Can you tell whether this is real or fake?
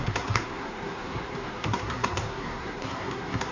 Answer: fake